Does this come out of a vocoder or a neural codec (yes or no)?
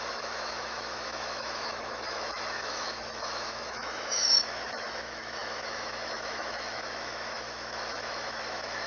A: yes